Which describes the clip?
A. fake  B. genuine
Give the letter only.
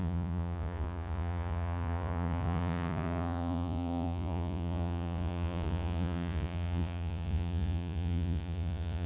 A